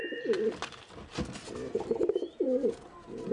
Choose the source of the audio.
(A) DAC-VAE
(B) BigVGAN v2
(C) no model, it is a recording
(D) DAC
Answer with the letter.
C